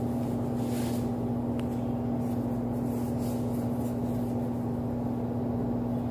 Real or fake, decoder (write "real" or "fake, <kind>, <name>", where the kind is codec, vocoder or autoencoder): real